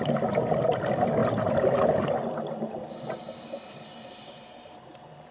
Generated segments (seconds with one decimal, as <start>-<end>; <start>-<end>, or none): none